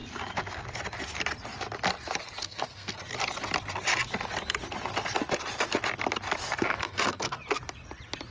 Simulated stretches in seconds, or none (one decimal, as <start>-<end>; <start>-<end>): 2.4-3.0; 6.7-7.4